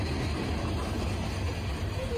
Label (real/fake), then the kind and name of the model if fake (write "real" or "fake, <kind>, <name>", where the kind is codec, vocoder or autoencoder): real